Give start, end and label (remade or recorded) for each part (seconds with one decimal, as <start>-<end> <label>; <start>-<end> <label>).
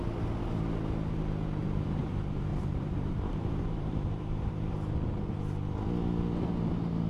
0.0-1.6 recorded; 1.6-2.1 remade; 2.1-2.5 recorded; 2.5-4.7 remade; 4.7-7.1 recorded